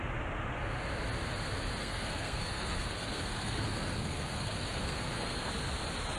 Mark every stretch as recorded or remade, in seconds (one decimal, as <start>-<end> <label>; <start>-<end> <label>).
0.0-1.8 recorded; 1.8-5.5 remade; 5.5-6.2 recorded